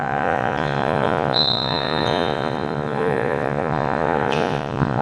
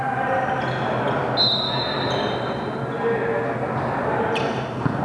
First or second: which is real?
second